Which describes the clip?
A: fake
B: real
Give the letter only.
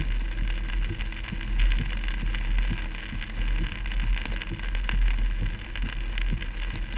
B